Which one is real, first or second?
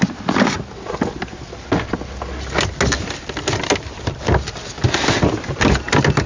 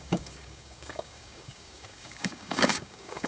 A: first